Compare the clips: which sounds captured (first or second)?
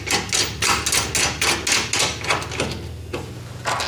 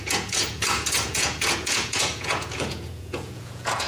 first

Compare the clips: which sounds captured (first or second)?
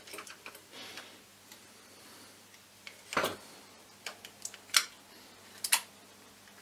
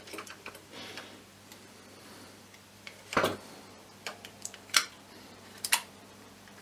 first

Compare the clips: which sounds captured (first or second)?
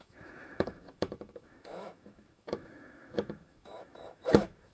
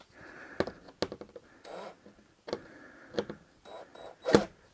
second